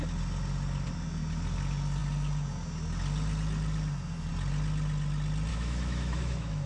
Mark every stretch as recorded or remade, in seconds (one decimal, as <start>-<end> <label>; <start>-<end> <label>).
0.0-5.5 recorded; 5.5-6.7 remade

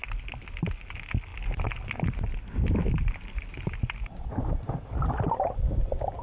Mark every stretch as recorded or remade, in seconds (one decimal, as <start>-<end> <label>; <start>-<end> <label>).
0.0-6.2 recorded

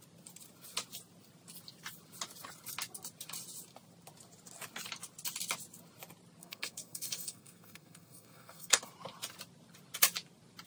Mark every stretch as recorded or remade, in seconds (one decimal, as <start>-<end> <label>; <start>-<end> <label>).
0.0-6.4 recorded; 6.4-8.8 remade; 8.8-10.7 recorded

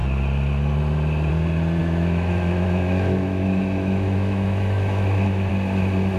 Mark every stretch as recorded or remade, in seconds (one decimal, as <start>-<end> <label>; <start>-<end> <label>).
0.0-1.8 recorded; 1.8-5.5 remade; 5.5-6.2 recorded